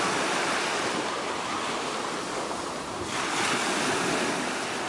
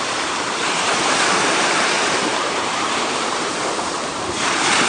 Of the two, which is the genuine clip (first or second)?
first